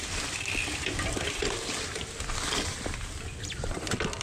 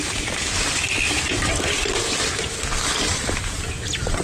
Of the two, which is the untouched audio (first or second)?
second